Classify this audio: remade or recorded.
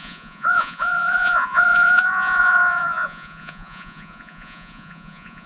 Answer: remade